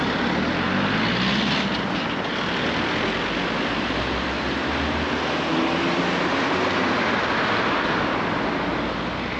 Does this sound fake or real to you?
real